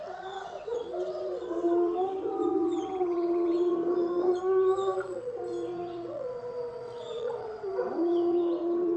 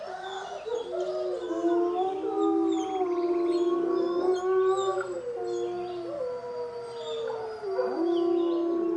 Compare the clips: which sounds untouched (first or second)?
second